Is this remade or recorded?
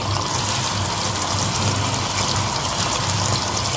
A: recorded